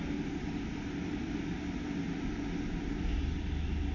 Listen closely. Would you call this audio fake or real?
real